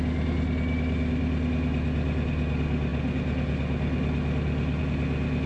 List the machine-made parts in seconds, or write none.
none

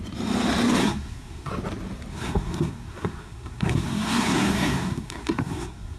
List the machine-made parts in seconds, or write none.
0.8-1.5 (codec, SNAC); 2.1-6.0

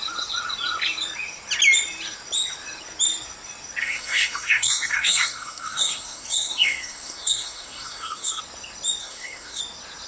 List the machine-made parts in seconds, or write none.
3.8-8.4 (codec, SNAC); 9.0-9.6

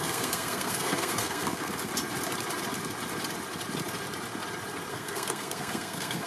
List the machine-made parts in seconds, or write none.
0.0-1.9 (codec, SNAC); 4.9-6.3